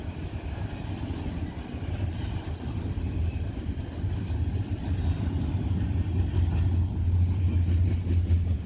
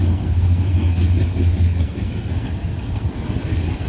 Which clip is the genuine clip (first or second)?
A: first